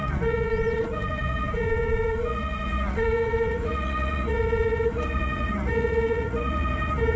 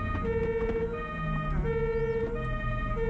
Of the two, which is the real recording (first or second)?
second